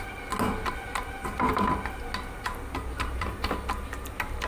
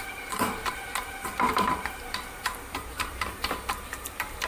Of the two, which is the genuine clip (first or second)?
first